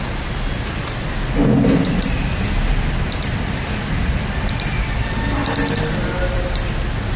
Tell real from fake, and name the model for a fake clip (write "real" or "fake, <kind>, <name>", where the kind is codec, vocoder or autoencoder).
real